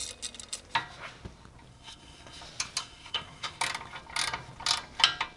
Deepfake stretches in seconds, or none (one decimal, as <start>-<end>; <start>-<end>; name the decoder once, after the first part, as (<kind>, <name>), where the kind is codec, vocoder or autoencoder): 1.7-2.4 (codec, SNAC); 2.8-3.6